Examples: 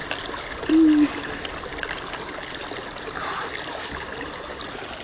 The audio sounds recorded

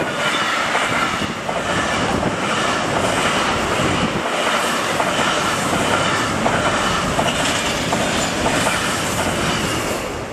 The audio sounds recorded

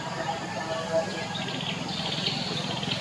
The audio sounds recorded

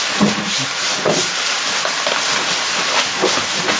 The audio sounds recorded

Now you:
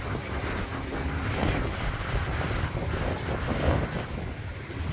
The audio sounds recorded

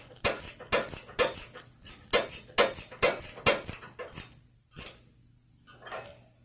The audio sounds recorded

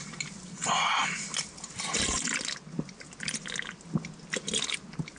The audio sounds recorded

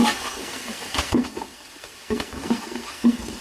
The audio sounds remade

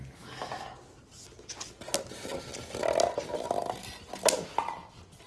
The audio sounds recorded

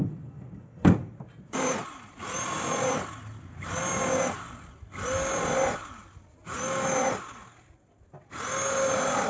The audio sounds recorded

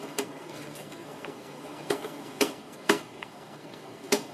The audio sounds remade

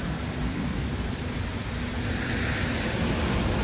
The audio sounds recorded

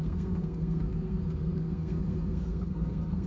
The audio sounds remade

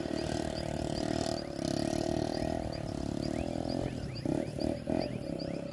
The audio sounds recorded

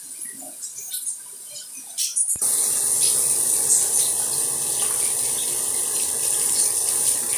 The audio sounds recorded